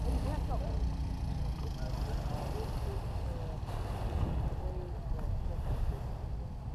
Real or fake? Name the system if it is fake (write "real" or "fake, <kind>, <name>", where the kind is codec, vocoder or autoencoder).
real